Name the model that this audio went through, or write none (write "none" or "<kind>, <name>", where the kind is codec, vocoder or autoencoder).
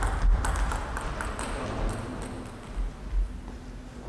none